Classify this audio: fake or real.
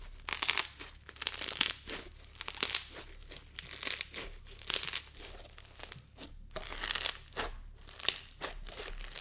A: real